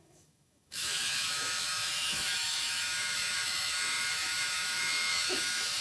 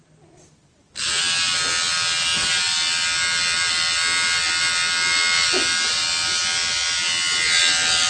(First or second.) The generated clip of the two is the first